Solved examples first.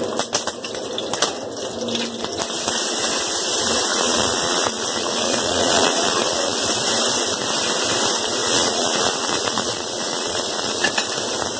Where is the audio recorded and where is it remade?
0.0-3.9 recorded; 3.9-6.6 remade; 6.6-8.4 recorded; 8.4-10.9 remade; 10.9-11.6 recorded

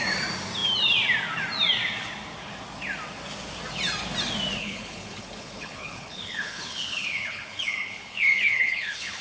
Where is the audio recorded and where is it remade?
0.0-4.6 recorded; 4.6-9.2 remade